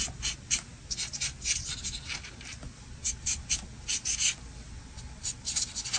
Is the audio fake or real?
real